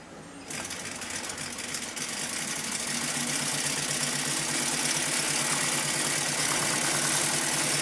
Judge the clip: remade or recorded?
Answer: recorded